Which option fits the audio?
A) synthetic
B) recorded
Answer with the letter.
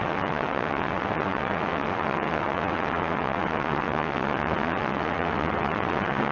A